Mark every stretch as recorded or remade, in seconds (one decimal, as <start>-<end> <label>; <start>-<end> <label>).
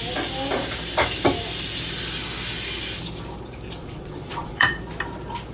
0.0-3.8 recorded; 3.8-4.8 remade; 4.8-5.5 recorded